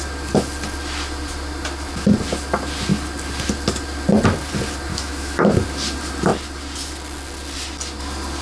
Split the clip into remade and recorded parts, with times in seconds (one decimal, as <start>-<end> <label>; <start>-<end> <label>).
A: 0.0-4.9 recorded; 4.9-5.5 remade; 5.5-8.4 recorded